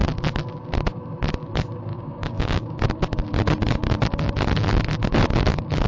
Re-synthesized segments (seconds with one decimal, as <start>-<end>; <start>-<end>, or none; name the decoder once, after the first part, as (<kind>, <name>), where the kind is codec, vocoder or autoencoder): 1.9-2.8 (codec, DAC)